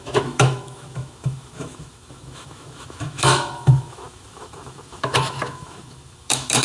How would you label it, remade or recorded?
remade